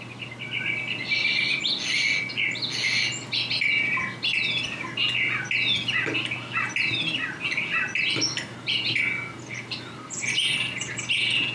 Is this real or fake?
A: real